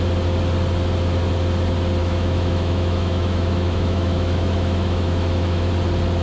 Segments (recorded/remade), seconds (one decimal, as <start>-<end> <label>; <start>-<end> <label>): 0.0-2.0 recorded; 2.0-5.7 remade; 5.7-6.2 recorded